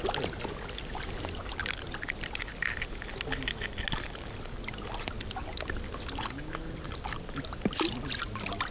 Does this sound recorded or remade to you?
recorded